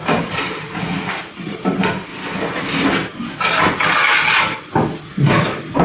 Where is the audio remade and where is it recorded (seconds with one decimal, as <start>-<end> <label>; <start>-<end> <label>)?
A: 0.0-5.8 recorded

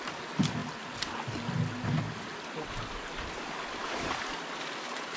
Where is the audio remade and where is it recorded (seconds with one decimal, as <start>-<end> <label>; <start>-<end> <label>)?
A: 0.0-0.6 remade; 0.6-3.7 recorded; 3.7-5.2 remade